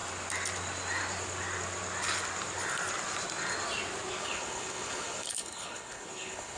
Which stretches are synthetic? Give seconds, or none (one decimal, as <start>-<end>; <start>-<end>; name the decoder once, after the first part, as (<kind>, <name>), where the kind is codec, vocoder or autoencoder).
4.2-6.6 (codec, HILCodec)